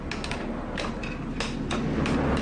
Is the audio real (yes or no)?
yes